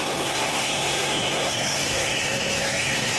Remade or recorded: remade